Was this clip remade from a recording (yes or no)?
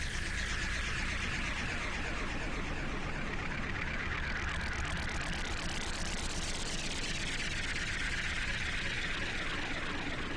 no